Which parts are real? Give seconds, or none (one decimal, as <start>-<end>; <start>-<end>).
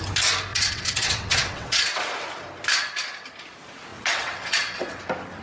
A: 0.0-0.5; 1.8-3.9; 5.0-5.4